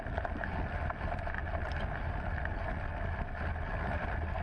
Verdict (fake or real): real